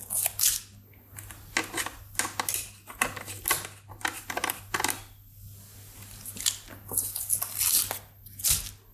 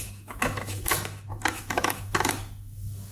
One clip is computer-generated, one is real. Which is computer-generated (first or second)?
second